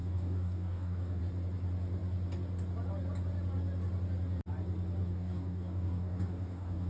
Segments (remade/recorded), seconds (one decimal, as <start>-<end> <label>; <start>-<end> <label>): 0.0-1.2 remade; 1.2-5.0 recorded; 5.0-6.9 remade